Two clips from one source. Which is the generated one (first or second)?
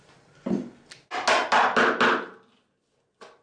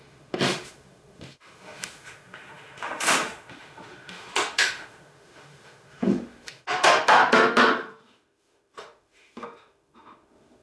second